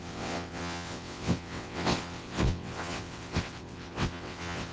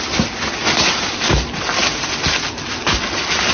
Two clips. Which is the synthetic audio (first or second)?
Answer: first